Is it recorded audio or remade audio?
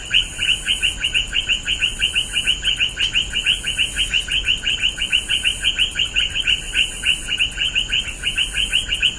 recorded